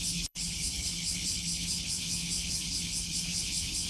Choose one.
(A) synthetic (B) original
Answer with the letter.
A